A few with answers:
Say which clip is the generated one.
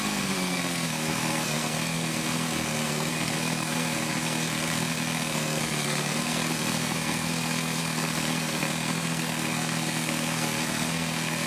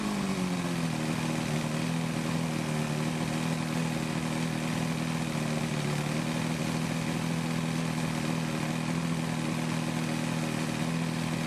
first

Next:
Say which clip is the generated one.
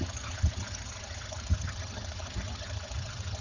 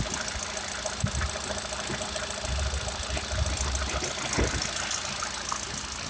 first